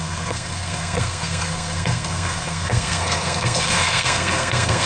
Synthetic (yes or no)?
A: yes